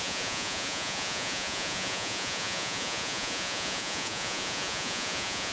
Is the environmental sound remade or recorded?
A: remade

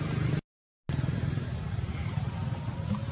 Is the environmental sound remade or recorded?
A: recorded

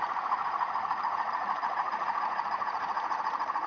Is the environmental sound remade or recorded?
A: remade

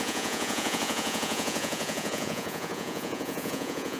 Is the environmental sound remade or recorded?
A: remade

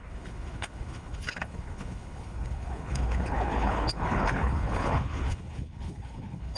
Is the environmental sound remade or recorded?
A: remade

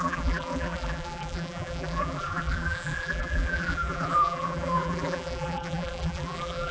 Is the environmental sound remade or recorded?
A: remade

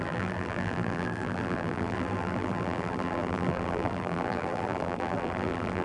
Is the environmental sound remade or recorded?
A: remade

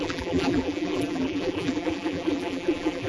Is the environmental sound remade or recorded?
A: remade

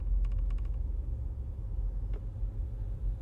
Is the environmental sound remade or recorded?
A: recorded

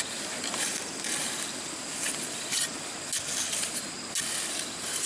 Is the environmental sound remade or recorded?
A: recorded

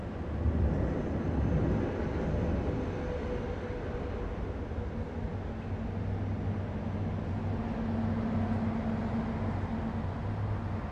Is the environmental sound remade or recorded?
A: recorded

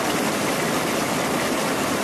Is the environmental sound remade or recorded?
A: recorded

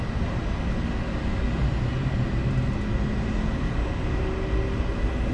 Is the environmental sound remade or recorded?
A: recorded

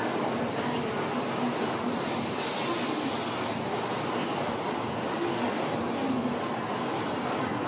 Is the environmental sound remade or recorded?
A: recorded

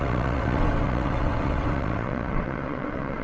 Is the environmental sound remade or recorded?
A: remade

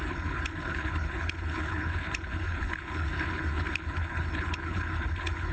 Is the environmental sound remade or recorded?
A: remade